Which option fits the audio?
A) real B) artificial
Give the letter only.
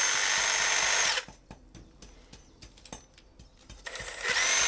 A